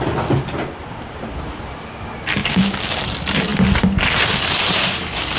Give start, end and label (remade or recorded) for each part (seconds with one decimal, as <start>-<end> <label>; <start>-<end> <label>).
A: 0.0-2.4 recorded; 2.4-3.0 remade; 3.0-5.4 recorded